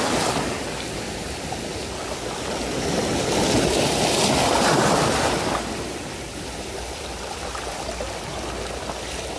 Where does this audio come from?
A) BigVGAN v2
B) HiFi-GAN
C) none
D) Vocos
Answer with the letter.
C